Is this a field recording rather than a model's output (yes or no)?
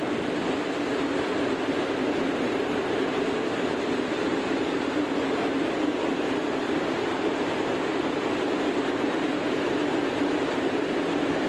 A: no